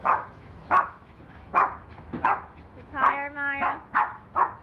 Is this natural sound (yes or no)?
no